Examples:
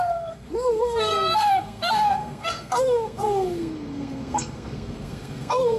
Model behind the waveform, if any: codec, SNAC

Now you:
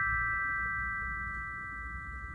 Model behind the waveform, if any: none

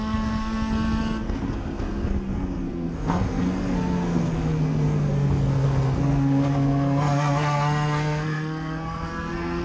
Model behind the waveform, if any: codec, SNAC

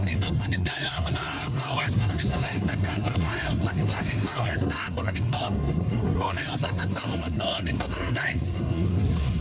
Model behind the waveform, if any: codec, SNAC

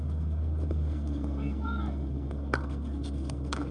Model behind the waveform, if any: codec, SNAC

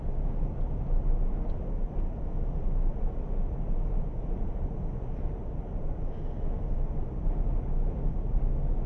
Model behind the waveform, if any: none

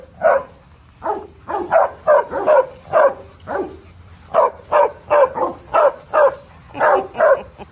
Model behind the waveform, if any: none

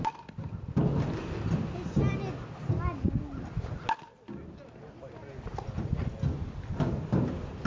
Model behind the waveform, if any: none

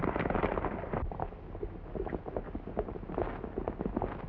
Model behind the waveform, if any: none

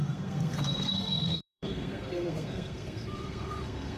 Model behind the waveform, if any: codec, SNAC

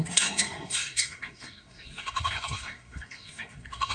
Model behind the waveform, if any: codec, SNAC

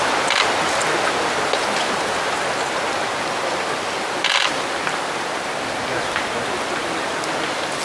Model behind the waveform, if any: none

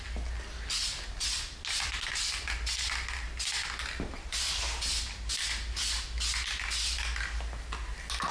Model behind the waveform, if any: none